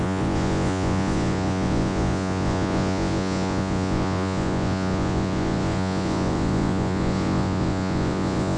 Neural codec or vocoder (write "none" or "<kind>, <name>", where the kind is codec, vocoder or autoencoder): vocoder, Vocos